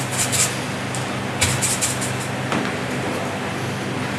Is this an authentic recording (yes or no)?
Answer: yes